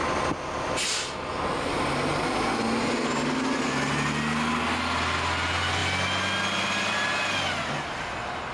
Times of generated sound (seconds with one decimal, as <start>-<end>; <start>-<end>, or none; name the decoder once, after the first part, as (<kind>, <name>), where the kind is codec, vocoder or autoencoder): none